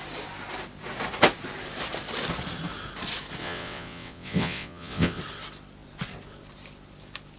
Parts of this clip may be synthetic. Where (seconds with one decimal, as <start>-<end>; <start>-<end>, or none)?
3.4-5.2